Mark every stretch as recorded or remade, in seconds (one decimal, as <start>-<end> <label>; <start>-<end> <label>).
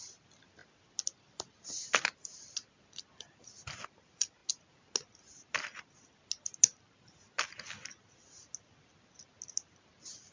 0.0-10.3 recorded